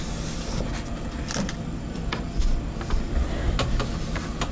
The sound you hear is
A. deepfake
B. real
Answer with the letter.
B